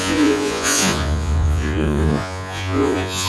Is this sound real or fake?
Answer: fake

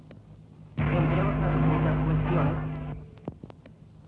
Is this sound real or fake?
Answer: real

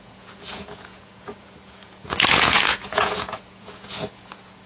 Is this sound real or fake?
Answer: fake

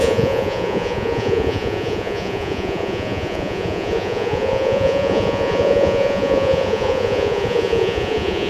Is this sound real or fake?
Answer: fake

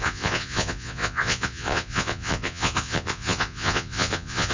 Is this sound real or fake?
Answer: fake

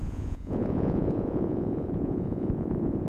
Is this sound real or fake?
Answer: fake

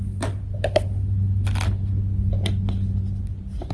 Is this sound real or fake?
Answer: real